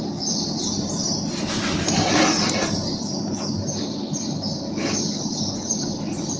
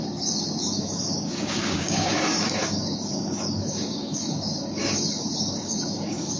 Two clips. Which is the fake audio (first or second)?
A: second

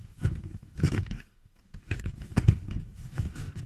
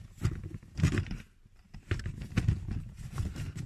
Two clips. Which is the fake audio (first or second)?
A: first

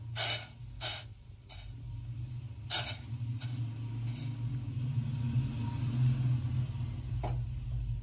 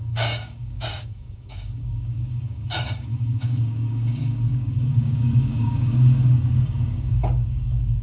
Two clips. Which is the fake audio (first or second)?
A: second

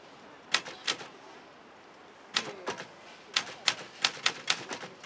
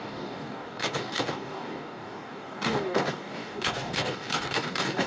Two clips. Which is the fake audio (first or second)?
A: second